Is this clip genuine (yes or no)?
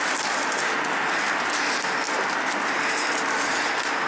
yes